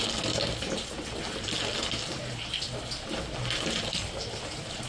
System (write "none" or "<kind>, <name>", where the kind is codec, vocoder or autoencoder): none